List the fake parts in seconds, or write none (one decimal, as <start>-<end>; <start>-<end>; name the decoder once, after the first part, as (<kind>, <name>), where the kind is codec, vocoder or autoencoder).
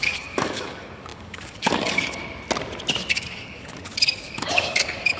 0.0-2.2 (codec, DAC); 3.1-5.2